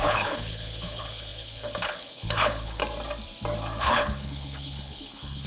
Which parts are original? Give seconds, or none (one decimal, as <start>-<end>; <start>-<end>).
2.8-3.8